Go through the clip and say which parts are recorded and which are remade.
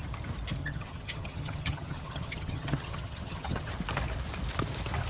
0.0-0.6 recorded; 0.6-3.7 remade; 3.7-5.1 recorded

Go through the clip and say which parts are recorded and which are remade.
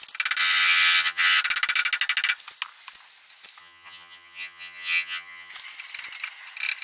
0.0-0.4 recorded; 0.4-1.4 remade; 1.4-3.6 recorded; 3.6-5.5 remade; 5.5-6.8 recorded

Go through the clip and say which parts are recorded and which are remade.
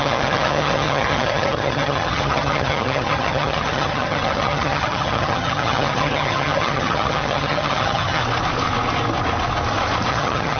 0.0-8.2 remade; 8.2-10.1 recorded; 10.1-10.6 remade